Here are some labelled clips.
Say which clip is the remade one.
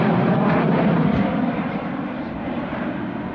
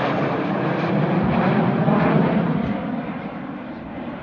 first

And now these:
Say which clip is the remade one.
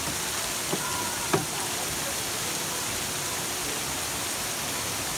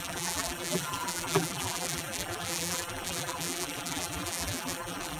second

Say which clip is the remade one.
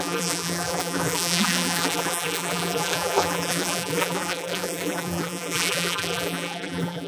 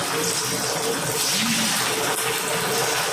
first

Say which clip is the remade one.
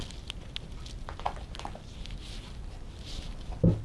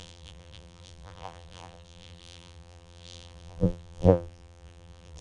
second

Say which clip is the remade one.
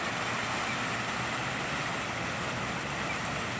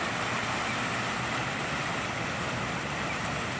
second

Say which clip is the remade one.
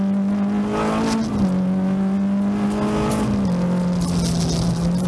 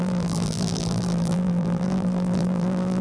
second